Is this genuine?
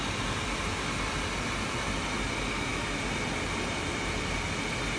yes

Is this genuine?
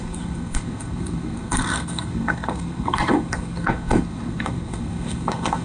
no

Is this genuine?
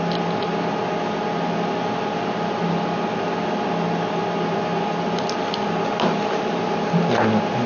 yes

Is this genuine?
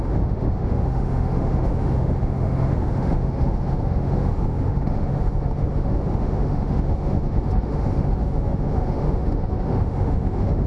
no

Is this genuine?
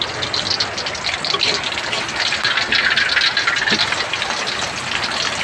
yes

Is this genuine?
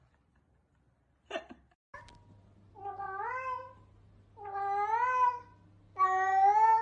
yes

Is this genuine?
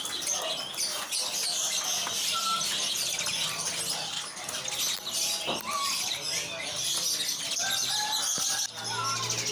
yes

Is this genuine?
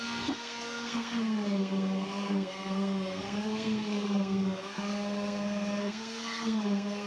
no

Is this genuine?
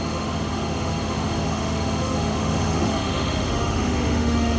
no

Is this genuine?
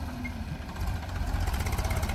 yes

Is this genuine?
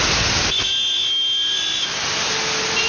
yes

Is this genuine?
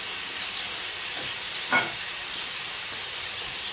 yes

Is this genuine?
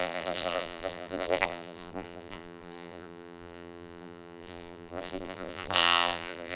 no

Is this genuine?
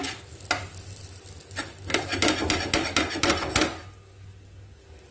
yes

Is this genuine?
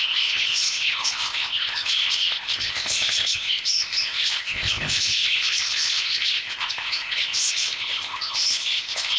no